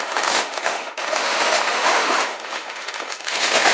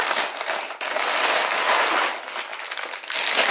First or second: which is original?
second